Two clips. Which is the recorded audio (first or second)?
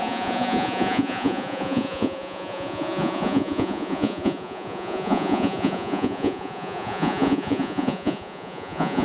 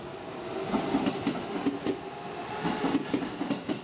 second